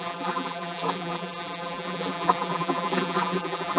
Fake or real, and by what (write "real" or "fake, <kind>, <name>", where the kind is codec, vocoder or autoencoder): fake, vocoder, BigVGAN v2